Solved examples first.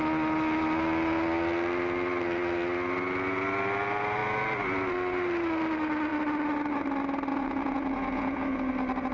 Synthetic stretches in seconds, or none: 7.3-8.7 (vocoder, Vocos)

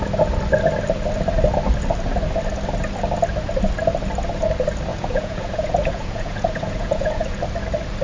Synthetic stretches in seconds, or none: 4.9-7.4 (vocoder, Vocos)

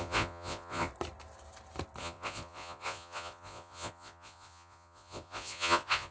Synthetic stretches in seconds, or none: 0.0-0.9 (vocoder, Vocos); 2.0-6.1

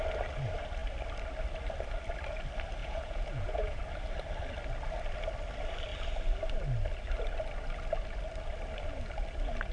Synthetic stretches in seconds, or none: 2.8-3.8 (vocoder, Vocos)

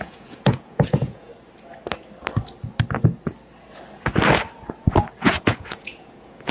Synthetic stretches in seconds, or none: 0.0-1.3 (vocoder, Vocos); 5.2-6.5

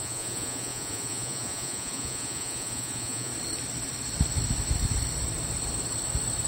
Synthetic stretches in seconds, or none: 0.0-3.3 (vocoder, Vocos)